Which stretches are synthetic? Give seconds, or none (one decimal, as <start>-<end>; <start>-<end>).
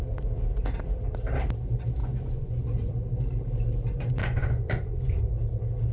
2.0-2.9; 4.2-5.2